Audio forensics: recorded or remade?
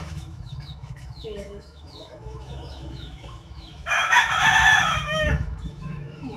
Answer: remade